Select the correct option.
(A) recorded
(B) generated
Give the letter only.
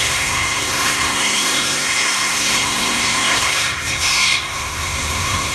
B